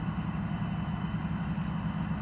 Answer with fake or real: real